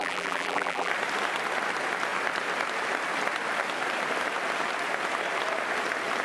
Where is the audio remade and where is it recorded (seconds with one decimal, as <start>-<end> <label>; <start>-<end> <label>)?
0.0-0.9 remade; 0.9-6.2 recorded